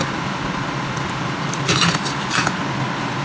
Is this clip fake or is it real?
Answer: real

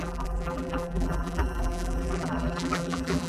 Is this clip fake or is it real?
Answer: fake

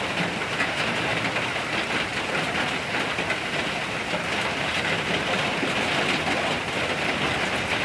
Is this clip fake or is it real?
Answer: real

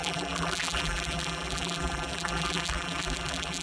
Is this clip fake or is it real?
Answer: fake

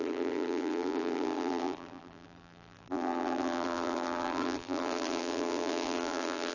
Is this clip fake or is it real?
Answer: fake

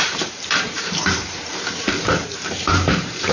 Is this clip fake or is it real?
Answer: fake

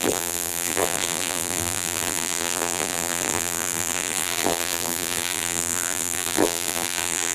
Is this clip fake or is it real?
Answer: fake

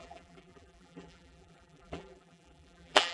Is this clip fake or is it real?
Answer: fake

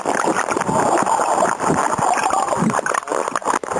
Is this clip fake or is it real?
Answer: real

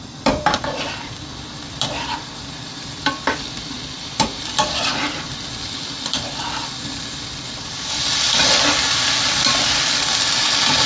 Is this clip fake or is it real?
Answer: fake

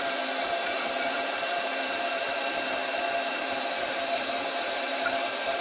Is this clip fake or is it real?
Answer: fake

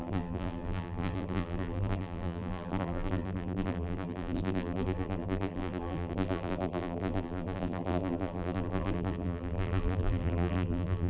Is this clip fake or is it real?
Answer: fake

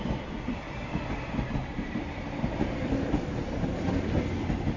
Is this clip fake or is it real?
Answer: fake